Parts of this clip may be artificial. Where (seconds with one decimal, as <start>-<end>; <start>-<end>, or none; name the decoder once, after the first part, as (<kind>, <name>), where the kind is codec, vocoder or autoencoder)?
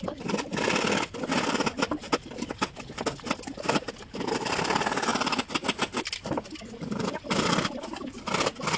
none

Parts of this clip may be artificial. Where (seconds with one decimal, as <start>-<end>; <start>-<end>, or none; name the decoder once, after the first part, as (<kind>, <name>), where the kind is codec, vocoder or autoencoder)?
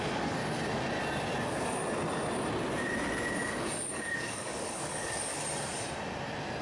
0.0-0.4 (codec, DAC); 1.4-1.8; 3.3-5.3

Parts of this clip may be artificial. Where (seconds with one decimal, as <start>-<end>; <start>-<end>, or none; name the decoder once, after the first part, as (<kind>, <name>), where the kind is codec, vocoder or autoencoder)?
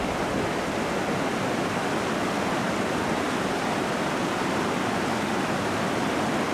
none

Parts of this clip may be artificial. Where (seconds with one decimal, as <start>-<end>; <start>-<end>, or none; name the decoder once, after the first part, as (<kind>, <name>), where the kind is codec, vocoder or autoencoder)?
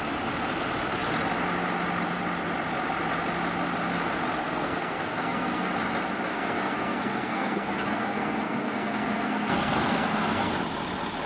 4.4-5.7 (codec, SNAC); 6.3-10.5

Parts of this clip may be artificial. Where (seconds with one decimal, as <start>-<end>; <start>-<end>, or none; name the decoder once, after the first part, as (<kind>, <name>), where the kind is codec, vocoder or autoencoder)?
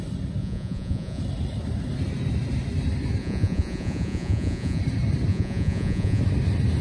0.4-1.2 (vocoder, Vocos); 3.2-4.8; 5.3-6.2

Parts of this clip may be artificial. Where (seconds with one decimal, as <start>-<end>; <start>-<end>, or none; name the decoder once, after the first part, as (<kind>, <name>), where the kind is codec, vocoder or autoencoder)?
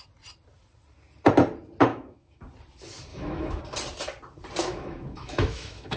1.9-2.4 (autoencoder, DAC-VAE); 3.1-3.6; 4.6-6.0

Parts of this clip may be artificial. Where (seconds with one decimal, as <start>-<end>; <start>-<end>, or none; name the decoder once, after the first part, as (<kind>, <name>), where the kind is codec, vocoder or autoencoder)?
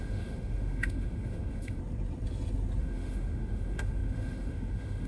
0.0-1.8 (autoencoder, DAC-VAE); 2.8-5.1